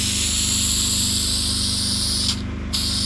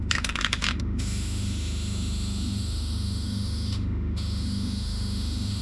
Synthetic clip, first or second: second